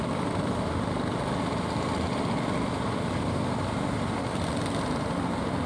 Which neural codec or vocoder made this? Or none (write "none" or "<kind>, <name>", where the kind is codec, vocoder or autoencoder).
none